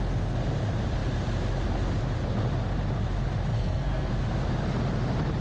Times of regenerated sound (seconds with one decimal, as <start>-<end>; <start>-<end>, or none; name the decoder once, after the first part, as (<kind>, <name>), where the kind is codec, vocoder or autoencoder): 3.5-4.1 (codec, SNAC)

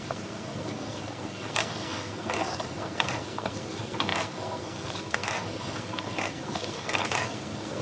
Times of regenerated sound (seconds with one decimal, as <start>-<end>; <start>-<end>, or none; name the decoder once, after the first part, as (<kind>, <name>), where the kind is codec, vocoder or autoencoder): 0.0-7.8 (codec, SNAC)

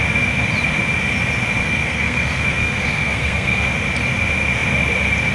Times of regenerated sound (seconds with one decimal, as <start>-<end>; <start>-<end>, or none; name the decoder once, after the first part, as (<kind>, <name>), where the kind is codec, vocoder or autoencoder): 1.6-3.7 (codec, SNAC)

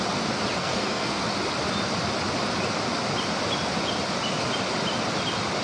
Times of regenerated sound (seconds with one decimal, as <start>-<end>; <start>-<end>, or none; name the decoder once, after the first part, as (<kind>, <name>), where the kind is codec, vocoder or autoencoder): 0.6-1.2 (codec, SNAC)

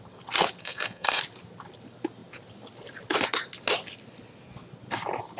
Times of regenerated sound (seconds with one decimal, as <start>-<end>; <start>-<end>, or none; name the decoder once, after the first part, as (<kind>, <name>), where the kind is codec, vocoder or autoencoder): 0.6-1.2 (codec, SNAC)

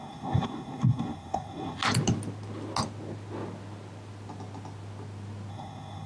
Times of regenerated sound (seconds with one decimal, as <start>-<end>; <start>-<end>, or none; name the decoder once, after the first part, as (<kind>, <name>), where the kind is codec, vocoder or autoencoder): 0.0-1.8 (codec, SNAC); 5.5-6.1